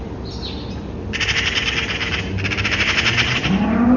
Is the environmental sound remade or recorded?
recorded